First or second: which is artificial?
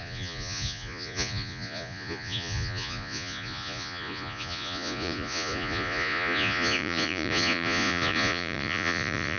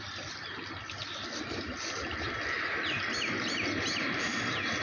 first